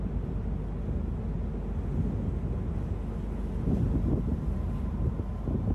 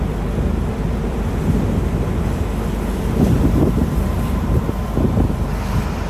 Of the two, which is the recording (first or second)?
first